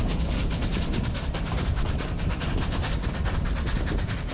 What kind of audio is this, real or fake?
real